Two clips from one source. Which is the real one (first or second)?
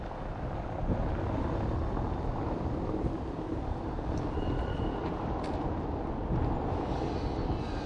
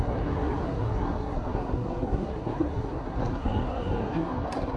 first